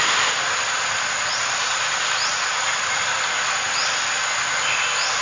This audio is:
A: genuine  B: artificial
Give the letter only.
A